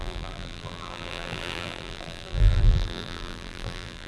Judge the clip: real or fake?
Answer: fake